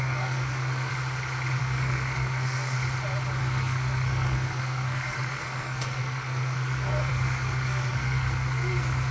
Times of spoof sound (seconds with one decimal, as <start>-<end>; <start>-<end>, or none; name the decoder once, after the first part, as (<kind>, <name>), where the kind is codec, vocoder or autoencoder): 0.0-0.9 (codec, SNAC); 1.6-2.8; 3.4-9.1